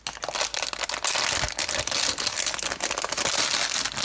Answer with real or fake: real